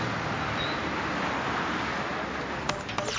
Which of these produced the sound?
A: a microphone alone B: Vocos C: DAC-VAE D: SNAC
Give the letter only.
A